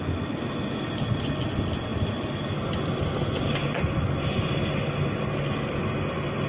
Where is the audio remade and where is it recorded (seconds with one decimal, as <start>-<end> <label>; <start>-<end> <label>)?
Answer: 0.0-6.5 recorded